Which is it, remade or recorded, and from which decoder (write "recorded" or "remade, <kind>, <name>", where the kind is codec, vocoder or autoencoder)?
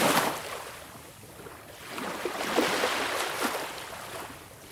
recorded